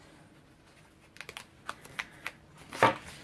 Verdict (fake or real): real